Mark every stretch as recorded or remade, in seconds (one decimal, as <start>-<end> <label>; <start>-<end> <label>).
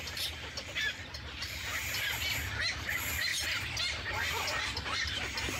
0.0-5.6 recorded